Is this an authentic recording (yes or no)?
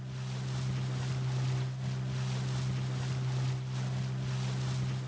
yes